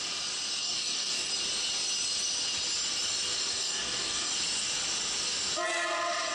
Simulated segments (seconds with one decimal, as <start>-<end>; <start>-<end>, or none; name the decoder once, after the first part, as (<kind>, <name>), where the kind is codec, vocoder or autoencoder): 0.6-1.3 (codec, DAC); 3.5-4.3